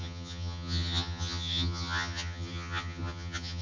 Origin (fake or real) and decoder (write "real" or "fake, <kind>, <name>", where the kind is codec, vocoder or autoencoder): fake, vocoder, HiFi-GAN